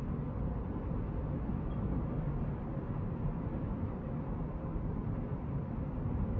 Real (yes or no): yes